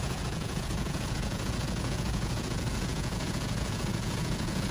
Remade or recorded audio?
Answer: remade